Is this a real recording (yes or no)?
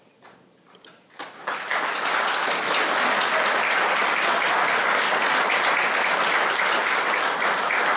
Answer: yes